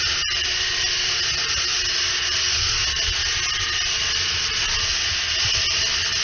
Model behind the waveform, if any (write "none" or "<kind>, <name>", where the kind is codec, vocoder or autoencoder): none